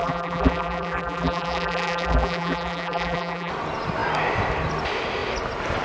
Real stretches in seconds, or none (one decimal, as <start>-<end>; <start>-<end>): 3.5-5.8